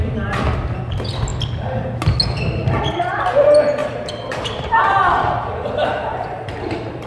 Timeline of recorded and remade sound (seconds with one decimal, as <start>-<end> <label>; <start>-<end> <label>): 0.0-3.8 recorded; 3.8-6.5 remade; 6.5-7.1 recorded